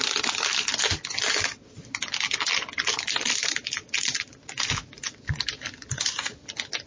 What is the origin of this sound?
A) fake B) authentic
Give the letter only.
B